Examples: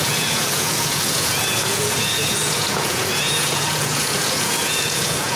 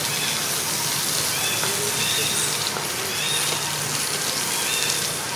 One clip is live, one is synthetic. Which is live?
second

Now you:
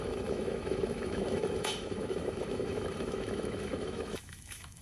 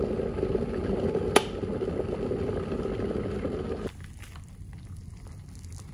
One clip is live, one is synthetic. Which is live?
second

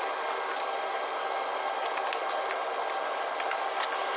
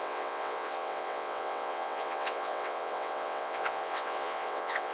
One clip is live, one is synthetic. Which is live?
first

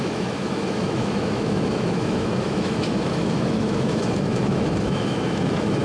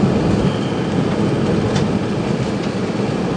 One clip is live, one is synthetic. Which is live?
second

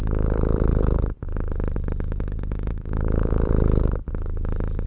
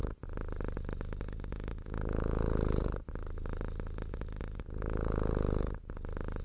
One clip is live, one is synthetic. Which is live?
second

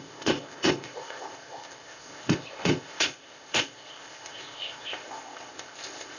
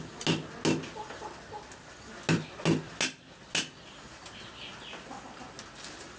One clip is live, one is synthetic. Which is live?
second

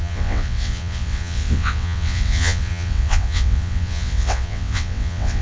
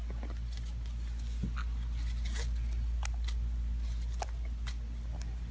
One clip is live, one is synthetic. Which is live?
second